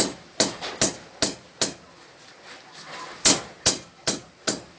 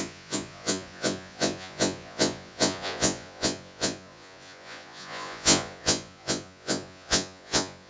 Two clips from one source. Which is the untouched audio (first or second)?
first